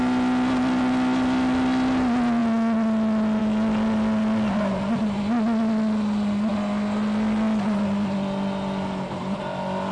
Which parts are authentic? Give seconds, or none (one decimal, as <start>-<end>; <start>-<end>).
0.0-9.9